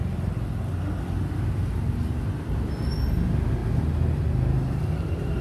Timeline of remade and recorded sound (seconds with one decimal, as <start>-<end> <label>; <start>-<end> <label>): 0.0-5.4 recorded

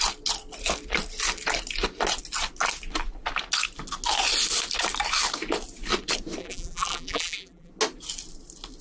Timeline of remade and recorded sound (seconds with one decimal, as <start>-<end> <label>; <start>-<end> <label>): 0.0-6.4 recorded; 6.4-7.7 remade; 7.7-8.8 recorded